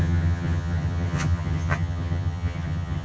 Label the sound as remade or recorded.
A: remade